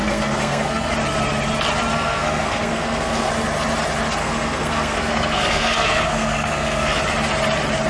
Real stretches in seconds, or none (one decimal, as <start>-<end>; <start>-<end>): 0.9-1.9; 3.3-4.2; 7.0-7.9

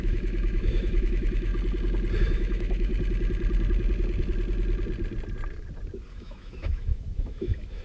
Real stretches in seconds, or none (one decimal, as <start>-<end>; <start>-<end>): 1.5-2.2; 2.9-6.1

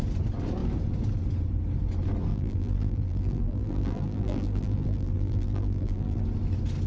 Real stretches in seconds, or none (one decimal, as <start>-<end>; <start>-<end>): 0.0-2.3; 6.2-6.9

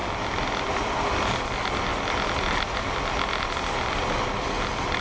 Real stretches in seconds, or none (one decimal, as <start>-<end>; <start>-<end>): 0.0-5.0

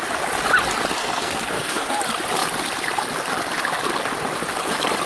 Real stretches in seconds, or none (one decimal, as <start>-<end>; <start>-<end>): 0.0-1.0; 2.0-5.1

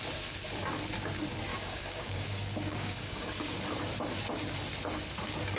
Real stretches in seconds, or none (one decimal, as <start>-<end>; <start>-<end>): 0.0-1.5; 3.6-5.6